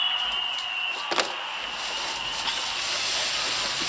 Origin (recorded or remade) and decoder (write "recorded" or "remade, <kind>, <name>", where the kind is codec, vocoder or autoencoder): recorded